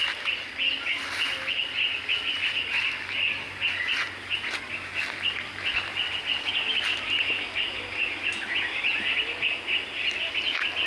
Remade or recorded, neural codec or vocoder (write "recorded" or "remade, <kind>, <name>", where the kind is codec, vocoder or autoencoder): recorded